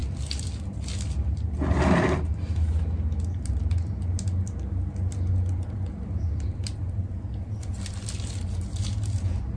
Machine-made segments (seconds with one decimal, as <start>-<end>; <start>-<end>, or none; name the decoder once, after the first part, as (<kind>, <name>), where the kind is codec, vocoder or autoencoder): none

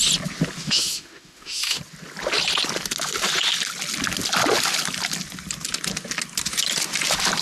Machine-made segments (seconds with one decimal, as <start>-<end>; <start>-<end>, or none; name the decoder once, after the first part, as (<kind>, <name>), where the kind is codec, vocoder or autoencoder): 0.6-1.8 (autoencoder, DAC-VAE)

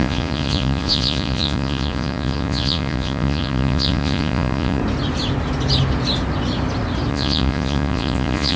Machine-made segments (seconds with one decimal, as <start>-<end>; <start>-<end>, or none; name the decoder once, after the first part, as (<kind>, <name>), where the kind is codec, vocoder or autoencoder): 0.0-4.8 (vocoder, Vocos); 7.1-8.6

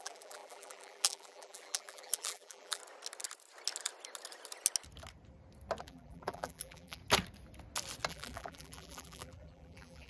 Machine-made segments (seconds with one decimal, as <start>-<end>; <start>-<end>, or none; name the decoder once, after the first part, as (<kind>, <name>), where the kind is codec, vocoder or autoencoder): 0.0-2.8 (vocoder, BigVGAN v2); 5.8-7.0; 8.1-10.1

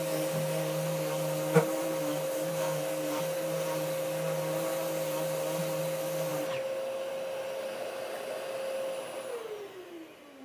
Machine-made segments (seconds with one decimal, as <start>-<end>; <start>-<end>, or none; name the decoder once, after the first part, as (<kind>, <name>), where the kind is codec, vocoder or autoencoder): 2.5-3.2 (codec, SNAC)

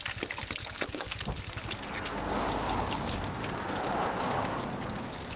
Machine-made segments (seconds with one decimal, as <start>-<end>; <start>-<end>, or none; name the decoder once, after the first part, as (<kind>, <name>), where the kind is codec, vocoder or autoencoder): 0.6-1.2 (codec, DAC); 2.1-5.4

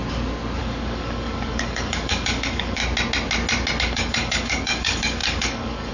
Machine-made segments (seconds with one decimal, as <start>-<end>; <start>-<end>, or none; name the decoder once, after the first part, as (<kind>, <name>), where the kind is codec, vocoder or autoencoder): 0.6-2.8 (codec, DAC); 3.8-5.9

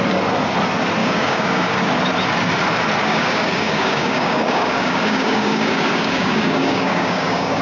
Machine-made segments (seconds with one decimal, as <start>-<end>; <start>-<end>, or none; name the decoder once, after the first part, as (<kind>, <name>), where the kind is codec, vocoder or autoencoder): 1.0-1.9 (codec, DAC); 3.0-7.6